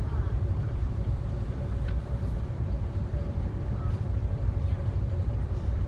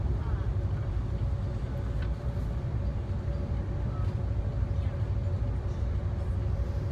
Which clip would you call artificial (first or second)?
first